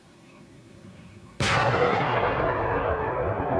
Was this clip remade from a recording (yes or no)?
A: yes